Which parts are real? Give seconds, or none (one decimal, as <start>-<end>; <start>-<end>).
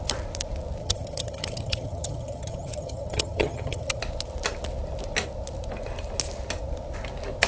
0.0-0.8; 4.0-7.5